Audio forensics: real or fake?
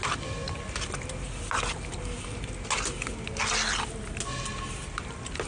real